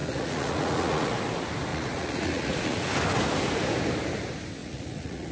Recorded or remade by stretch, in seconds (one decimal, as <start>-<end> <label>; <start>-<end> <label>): 0.0-1.2 remade; 1.2-1.7 recorded; 1.7-2.9 remade; 2.9-4.6 recorded; 4.6-5.3 remade